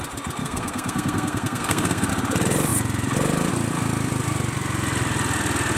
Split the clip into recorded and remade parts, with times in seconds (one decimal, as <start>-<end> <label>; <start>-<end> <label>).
0.0-0.4 recorded; 0.4-2.1 remade; 2.1-5.8 recorded